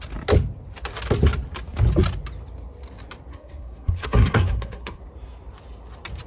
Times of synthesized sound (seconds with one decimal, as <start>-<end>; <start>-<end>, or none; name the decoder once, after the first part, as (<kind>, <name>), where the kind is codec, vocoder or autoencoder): 3.3-5.0 (codec, SNAC)